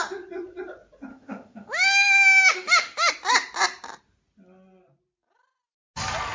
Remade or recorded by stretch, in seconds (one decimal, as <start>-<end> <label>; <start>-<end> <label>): 0.0-1.1 recorded; 1.1-3.1 remade; 3.1-6.3 recorded